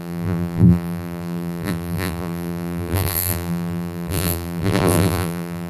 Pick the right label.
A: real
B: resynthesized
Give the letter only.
B